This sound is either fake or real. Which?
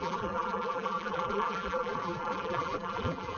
fake